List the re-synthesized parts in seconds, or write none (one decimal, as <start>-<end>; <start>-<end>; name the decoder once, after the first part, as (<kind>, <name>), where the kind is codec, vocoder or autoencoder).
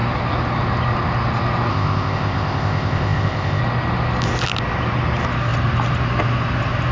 1.7-3.6 (codec, ZipCodec)